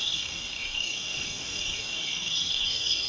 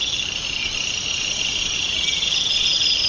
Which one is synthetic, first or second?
first